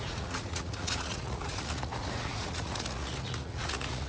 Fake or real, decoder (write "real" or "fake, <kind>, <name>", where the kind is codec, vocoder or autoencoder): fake, vocoder, Vocos